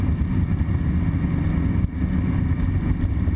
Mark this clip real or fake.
real